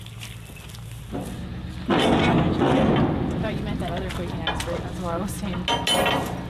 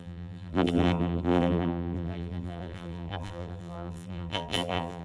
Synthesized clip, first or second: second